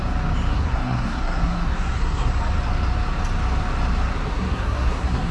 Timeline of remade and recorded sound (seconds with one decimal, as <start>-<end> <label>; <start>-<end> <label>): 0.0-0.5 recorded; 0.5-2.3 remade; 2.3-4.3 recorded; 4.3-5.3 remade

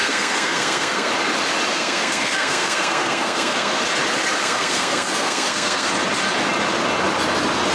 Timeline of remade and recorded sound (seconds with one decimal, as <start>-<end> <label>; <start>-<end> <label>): 0.0-1.1 remade; 1.1-1.7 recorded; 1.7-3.8 remade; 3.8-4.4 recorded; 4.4-5.9 remade; 5.9-7.7 recorded

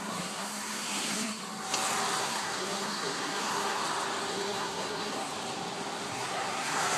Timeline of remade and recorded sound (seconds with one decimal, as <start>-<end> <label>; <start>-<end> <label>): 0.0-1.4 remade; 1.4-2.2 recorded; 2.2-3.8 remade; 3.8-4.3 recorded; 4.3-5.3 remade; 5.3-6.1 recorded; 6.1-7.0 remade

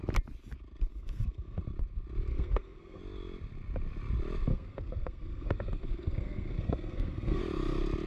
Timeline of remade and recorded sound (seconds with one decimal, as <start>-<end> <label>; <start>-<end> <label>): 0.0-0.9 recorded; 0.9-1.6 remade; 1.6-2.3 recorded; 2.3-3.0 remade; 3.0-4.5 recorded; 4.5-7.4 remade; 7.4-8.1 recorded